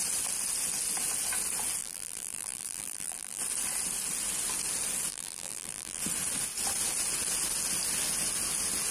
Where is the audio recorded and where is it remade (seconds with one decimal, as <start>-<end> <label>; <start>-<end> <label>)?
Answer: 0.0-1.8 recorded; 1.8-3.4 remade; 3.4-5.1 recorded; 5.1-6.0 remade; 6.0-8.9 recorded